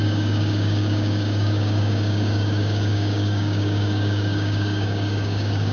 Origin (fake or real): fake